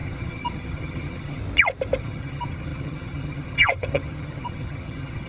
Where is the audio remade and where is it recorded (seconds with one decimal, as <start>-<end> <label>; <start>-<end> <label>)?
0.0-1.4 remade; 1.4-2.0 recorded; 2.0-5.3 remade